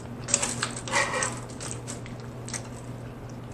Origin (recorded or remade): recorded